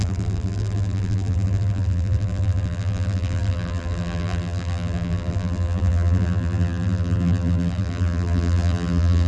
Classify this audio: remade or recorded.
remade